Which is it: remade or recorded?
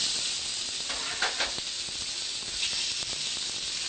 recorded